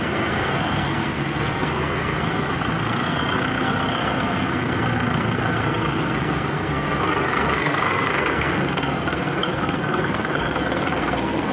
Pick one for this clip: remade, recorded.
remade